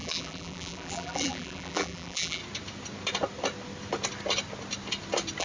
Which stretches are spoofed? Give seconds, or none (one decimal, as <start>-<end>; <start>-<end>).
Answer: 0.0-2.4